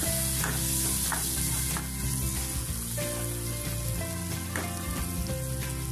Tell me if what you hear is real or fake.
real